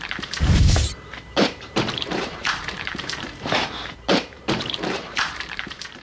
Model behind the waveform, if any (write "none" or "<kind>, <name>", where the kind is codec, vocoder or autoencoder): vocoder, BigVGAN v2